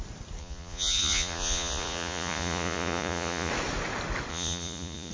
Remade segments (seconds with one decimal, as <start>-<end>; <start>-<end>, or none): 0.4-3.5; 4.3-5.1